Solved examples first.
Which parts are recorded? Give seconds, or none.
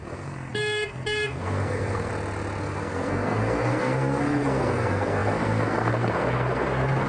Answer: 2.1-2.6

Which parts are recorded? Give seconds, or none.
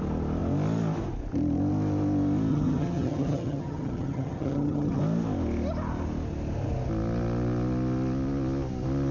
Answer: 0.0-2.5; 5.0-9.1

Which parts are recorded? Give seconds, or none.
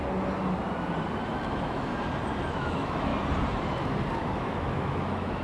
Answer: 0.0-1.4; 1.9-2.5; 3.1-4.1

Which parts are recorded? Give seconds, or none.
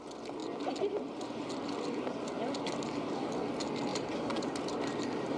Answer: 0.0-3.9